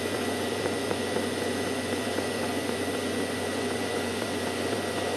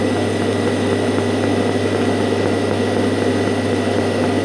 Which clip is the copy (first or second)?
first